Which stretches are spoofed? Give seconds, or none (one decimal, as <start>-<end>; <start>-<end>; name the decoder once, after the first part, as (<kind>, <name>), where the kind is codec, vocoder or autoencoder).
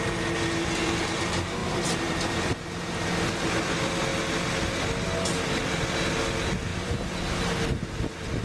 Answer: none